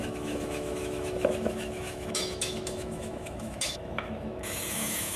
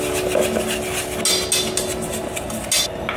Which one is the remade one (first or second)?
first